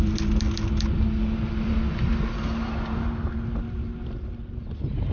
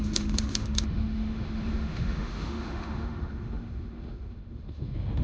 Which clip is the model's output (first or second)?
second